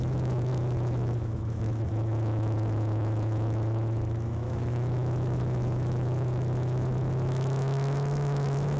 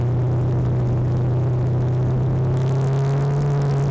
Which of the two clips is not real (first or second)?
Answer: first